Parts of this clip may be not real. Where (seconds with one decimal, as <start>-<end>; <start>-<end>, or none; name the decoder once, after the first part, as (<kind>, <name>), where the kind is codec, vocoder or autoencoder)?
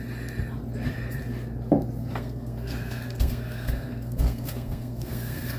2.0-5.6 (codec, SNAC)